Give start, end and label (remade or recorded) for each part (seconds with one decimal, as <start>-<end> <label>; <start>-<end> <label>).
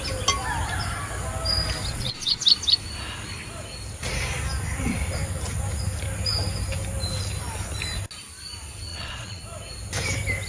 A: 0.0-1.9 recorded; 1.9-2.4 remade; 2.4-8.9 recorded; 8.9-9.4 remade; 9.4-10.5 recorded